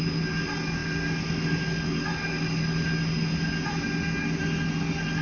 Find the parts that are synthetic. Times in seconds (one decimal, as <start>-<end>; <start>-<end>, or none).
none